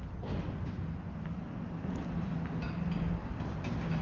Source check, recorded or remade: recorded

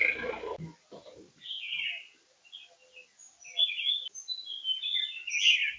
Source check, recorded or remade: recorded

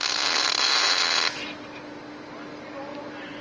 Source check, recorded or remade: recorded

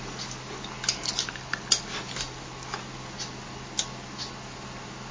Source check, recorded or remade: recorded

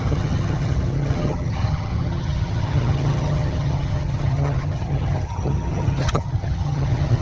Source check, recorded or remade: remade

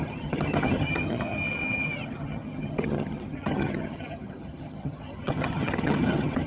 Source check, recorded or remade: remade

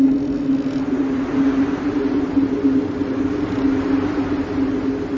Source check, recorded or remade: recorded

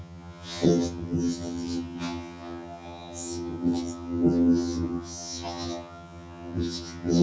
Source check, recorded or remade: remade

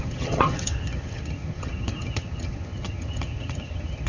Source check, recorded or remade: remade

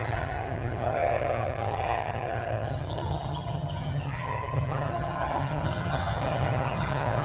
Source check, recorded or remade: remade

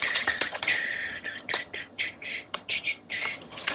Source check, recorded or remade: remade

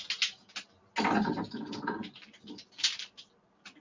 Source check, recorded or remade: recorded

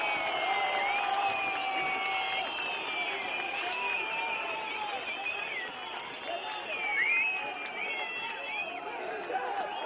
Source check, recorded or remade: recorded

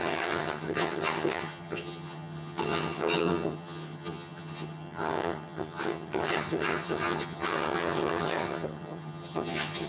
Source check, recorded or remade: remade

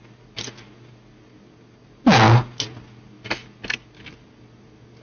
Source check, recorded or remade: recorded